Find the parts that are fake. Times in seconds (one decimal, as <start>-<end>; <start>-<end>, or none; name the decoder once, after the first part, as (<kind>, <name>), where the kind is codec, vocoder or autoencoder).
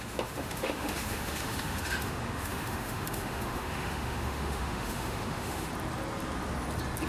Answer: 0.0-5.7 (autoencoder, DAC-VAE)